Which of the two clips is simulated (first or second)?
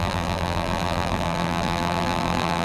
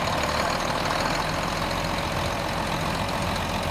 first